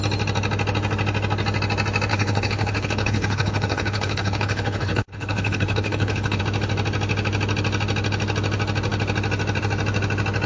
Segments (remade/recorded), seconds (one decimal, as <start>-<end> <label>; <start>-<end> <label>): 0.0-2.1 recorded; 2.1-6.4 remade; 6.4-10.5 recorded